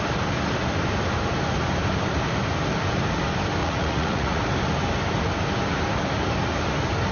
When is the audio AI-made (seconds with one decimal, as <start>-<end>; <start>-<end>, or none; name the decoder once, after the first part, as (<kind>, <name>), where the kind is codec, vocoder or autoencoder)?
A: 3.6-4.4 (vocoder, Vocos)